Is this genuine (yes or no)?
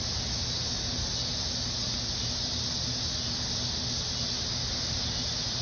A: yes